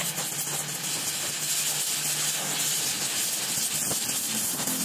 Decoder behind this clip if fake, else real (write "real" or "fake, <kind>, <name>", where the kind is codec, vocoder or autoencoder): real